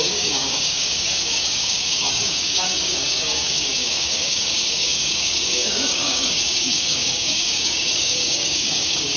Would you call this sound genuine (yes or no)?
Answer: no